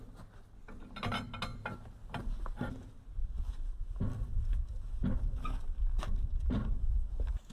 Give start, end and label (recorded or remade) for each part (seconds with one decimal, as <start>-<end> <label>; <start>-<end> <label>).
0.0-7.5 recorded